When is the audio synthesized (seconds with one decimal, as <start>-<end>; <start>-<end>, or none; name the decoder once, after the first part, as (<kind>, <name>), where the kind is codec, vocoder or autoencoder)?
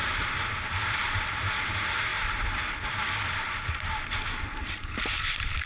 none